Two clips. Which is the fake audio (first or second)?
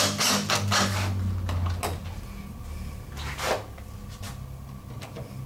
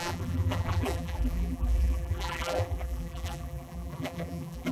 second